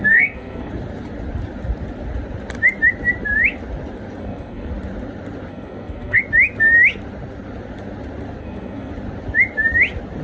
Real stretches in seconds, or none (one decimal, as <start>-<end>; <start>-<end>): 0.7-4.2; 4.7-5.5; 6.2-8.4; 8.9-10.2